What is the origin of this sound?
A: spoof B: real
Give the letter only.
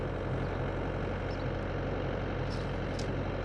B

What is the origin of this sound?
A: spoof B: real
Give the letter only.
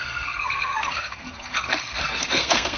A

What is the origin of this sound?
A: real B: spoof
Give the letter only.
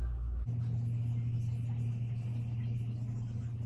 A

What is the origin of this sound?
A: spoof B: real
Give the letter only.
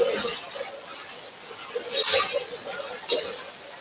B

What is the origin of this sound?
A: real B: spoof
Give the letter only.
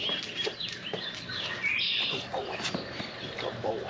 A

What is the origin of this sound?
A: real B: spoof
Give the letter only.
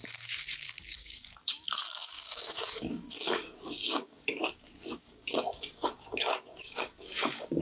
B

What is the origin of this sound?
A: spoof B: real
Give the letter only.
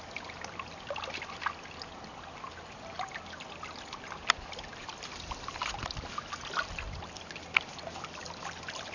B